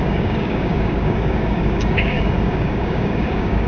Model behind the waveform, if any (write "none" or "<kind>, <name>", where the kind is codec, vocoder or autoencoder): codec, DAC